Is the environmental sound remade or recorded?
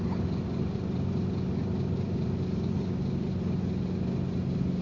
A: recorded